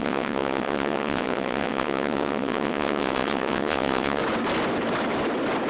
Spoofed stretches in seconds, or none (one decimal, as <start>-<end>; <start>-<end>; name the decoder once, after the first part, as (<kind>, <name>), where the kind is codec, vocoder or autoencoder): 0.0-4.2 (vocoder, WaveNeXt)

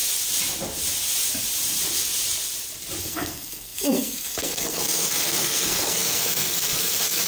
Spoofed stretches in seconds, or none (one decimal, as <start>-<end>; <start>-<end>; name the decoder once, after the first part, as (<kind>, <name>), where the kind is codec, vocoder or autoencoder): 3.0-7.3 (codec, SNAC)

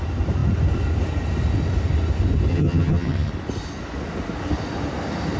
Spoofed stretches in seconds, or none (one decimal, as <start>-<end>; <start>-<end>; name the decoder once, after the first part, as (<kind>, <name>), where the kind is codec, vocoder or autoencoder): 2.5-3.3 (vocoder, HiFi-GAN)

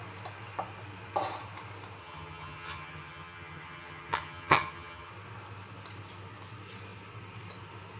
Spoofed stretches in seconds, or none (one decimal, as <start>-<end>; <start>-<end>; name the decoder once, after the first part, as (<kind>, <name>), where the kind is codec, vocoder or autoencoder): 2.0-5.1 (vocoder, HiFi-GAN)

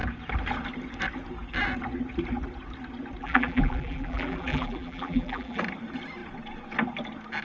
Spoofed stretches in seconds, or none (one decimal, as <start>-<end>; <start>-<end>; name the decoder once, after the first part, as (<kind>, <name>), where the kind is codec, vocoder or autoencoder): 3.2-5.6 (vocoder, BigVGAN v2)

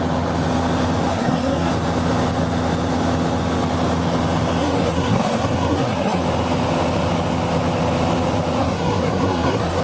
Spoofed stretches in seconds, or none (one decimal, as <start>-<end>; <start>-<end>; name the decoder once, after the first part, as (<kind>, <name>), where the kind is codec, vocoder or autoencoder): 1.1-1.7 (codec, SNAC); 4.6-6.2; 8.6-9.8